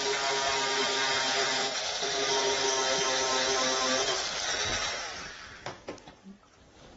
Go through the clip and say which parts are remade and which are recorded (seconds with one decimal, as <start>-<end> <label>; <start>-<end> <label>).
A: 0.0-1.6 recorded; 1.6-2.6 remade; 2.6-4.8 recorded; 4.8-5.3 remade; 5.3-7.0 recorded